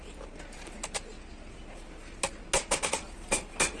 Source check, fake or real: real